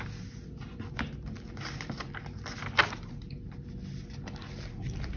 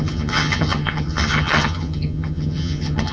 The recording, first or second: first